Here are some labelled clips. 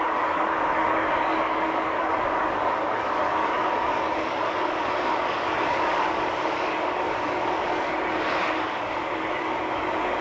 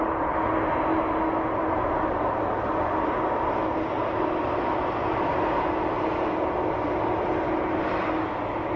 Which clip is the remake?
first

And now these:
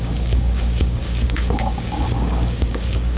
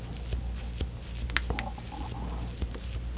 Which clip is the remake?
first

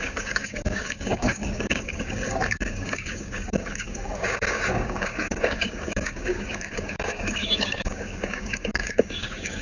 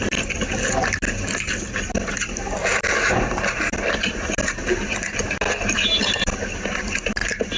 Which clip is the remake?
first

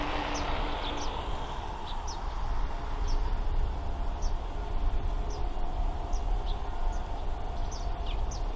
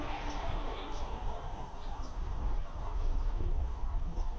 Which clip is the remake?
second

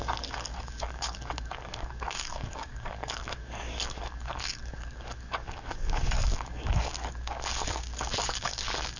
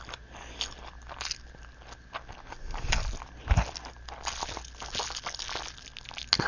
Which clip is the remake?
first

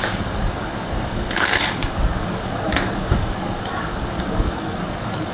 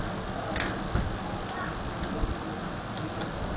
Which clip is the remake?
first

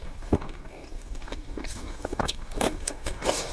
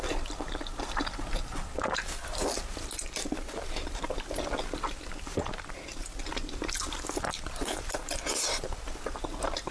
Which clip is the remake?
first